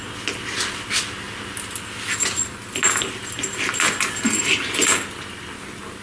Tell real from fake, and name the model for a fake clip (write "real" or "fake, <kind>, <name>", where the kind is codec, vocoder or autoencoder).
real